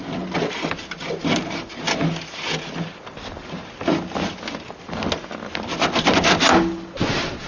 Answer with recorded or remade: recorded